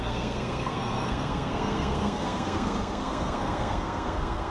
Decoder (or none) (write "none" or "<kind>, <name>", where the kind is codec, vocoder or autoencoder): codec, SNAC